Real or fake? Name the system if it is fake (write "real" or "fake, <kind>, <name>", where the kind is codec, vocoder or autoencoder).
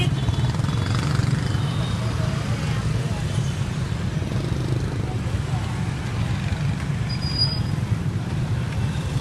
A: real